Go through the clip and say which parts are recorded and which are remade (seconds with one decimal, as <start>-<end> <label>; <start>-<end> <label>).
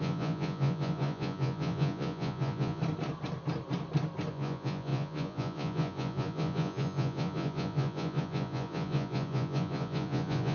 0.0-2.8 remade; 2.8-4.3 recorded; 4.3-10.5 remade